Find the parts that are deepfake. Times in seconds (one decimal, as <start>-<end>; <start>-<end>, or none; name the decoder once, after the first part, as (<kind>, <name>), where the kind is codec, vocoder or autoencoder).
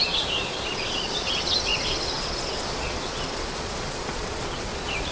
0.0-5.1 (vocoder, Vocos)